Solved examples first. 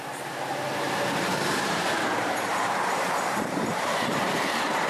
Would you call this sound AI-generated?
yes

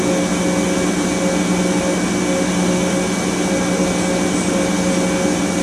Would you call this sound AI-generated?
no